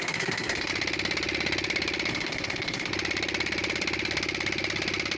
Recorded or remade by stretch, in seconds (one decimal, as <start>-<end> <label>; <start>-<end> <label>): 0.0-0.7 remade; 0.7-2.1 recorded; 2.1-2.9 remade; 2.9-5.2 recorded